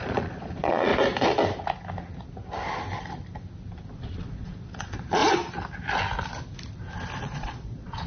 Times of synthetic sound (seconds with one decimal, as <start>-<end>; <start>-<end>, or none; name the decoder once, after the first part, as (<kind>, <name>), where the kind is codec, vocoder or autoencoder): 0.0-0.9 (vocoder, Vocos); 3.9-5.2; 7.2-8.1